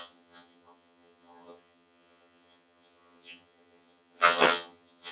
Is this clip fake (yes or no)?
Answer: yes